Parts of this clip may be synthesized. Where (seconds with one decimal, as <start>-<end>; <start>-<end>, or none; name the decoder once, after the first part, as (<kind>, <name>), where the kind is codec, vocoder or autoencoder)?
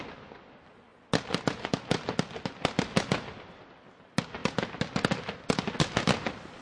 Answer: none